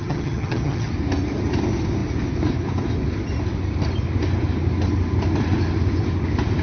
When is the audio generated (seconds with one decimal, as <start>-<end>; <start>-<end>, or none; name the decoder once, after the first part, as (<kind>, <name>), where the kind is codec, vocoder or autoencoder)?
0.0-0.9 (vocoder, HiFi-GAN)